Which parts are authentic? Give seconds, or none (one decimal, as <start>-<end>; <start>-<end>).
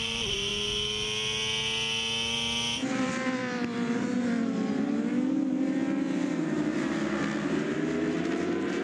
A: 0.5-2.9; 3.4-5.1